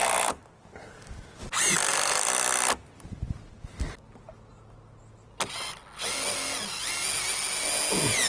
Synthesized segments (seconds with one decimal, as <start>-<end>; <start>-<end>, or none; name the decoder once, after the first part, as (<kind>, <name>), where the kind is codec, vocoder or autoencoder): none